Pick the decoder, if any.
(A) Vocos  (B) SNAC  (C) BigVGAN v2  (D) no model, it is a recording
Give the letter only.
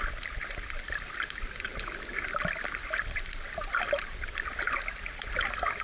D